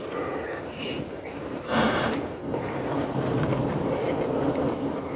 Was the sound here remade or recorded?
remade